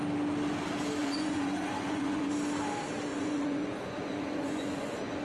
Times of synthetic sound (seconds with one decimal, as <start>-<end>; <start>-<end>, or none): 1.0-2.3; 3.1-5.2